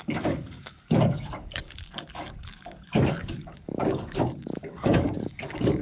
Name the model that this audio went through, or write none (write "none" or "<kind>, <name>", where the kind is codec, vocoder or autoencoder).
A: codec, DAC